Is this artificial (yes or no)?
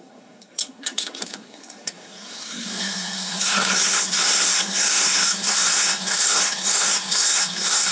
yes